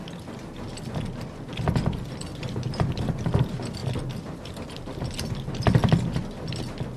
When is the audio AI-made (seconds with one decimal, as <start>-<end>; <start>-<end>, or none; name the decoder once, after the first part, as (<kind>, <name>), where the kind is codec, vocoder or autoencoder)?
2.3-2.9 (vocoder, BigVGAN v2); 3.8-5.6